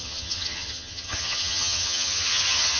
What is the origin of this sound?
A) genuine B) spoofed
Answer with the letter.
B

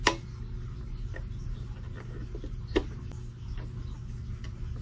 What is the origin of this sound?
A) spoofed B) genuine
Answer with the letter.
B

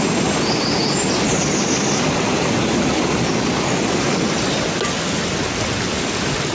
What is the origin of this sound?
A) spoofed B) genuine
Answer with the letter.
B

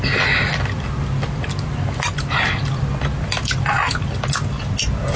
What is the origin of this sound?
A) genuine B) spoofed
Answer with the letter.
A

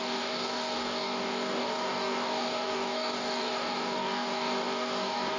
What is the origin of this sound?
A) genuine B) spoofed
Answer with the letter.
B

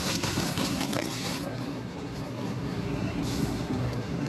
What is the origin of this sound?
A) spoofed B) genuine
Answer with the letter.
A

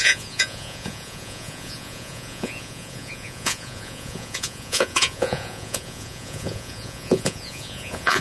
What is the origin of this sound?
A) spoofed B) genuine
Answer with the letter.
A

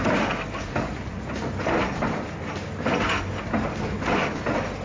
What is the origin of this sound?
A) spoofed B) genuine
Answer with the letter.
B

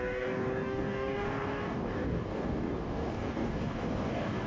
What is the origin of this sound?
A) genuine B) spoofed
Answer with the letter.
B